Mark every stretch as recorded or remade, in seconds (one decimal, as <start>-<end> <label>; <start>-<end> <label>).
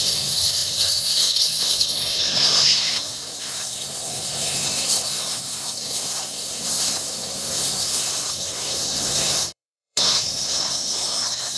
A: 0.0-11.6 remade